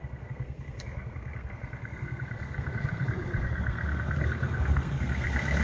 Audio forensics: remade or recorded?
remade